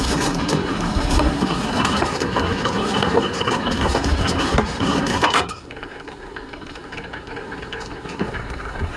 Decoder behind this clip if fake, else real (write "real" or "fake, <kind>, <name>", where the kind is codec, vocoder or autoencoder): fake, codec, SNAC